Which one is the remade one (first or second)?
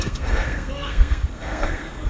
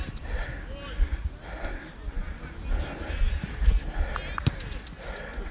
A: first